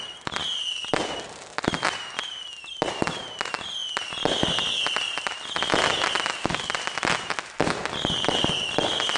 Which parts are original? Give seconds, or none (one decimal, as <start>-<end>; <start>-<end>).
0.0-9.2